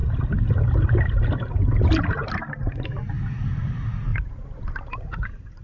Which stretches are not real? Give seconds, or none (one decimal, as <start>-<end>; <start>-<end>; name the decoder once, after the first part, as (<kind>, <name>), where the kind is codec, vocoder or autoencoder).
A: none